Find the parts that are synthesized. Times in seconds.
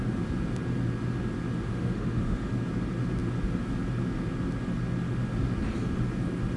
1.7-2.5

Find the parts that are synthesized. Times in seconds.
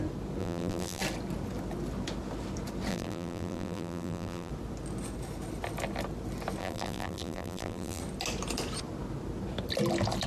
0.4-1.0; 2.9-4.5; 6.6-8.0